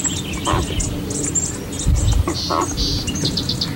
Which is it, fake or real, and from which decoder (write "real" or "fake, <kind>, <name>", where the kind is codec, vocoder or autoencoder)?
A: real